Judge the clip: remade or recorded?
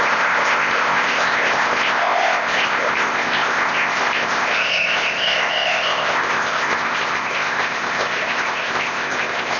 remade